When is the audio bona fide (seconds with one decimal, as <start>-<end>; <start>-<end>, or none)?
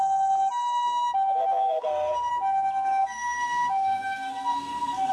0.0-1.6; 2.3-3.0